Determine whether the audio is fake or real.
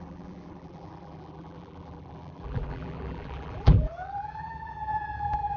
fake